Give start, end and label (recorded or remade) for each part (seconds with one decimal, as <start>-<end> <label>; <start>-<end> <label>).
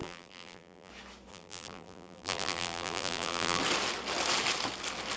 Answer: 0.0-0.9 remade; 0.9-1.3 recorded; 1.3-3.6 remade; 3.6-5.2 recorded